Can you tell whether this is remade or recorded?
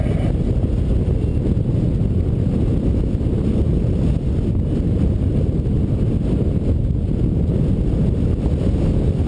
recorded